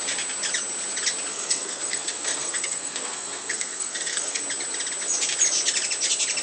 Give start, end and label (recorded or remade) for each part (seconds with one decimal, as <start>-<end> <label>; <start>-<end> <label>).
0.0-1.3 recorded; 1.3-4.4 remade; 4.4-6.4 recorded

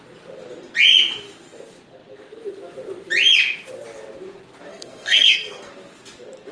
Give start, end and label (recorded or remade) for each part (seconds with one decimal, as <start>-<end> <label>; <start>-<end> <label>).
0.0-4.7 recorded; 4.7-5.7 remade; 5.7-6.5 recorded

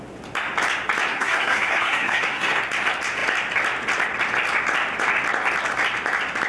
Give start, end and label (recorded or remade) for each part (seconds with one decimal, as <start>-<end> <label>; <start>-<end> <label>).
0.0-1.1 recorded; 1.1-2.6 remade; 2.6-6.5 recorded

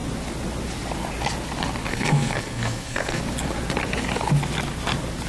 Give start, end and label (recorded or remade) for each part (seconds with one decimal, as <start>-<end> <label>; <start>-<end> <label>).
0.0-1.9 recorded; 1.9-3.2 remade; 3.2-5.3 recorded

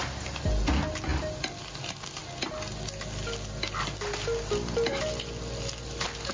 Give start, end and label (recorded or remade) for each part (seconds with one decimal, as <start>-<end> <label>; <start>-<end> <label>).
0.0-6.3 recorded

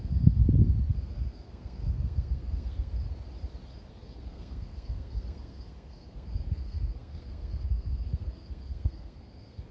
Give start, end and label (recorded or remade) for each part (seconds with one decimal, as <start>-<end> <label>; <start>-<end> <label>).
0.0-0.4 remade; 0.4-0.9 recorded; 0.9-2.9 remade; 2.9-3.9 recorded; 3.9-9.7 remade

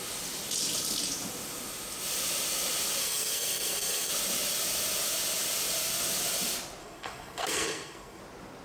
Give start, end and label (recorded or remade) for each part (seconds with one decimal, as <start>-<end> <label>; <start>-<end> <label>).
0.0-3.0 recorded; 3.0-4.1 remade; 4.1-6.8 recorded; 6.8-8.2 remade; 8.2-8.6 recorded

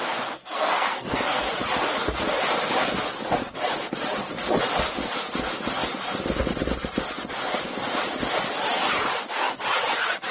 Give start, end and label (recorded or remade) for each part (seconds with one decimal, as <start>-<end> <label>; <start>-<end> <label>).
0.0-0.4 recorded; 0.4-1.4 remade; 1.4-10.3 recorded